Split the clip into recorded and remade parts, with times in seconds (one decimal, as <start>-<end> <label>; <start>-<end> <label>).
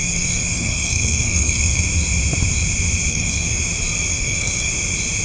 0.0-1.8 remade; 1.8-3.1 recorded; 3.1-3.6 remade; 3.6-4.1 recorded; 4.1-4.7 remade; 4.7-5.2 recorded